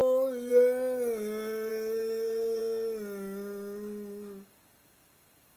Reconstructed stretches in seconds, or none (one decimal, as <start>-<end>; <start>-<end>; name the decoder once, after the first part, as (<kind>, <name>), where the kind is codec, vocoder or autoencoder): 1.7-2.6 (codec, SNAC)